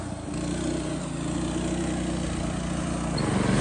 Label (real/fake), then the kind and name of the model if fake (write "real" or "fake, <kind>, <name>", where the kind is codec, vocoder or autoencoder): real